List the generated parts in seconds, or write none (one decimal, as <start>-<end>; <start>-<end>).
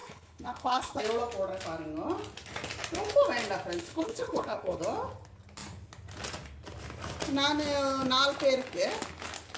0.0-1.0; 3.8-4.8